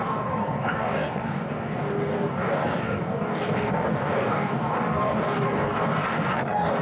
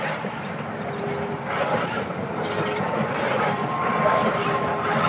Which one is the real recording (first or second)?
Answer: second